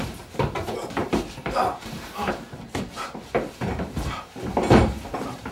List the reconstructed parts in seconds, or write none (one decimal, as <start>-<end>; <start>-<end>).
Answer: 1.0-4.3